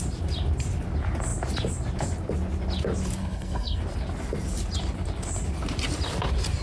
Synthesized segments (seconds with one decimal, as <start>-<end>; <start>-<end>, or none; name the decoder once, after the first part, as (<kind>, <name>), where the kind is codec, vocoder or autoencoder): 3.2-3.8 (codec, SNAC)